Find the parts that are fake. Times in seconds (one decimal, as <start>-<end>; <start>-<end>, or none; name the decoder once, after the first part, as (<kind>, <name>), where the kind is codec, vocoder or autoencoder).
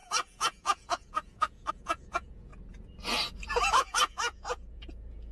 0.0-2.5 (vocoder, Vocos); 3.5-5.3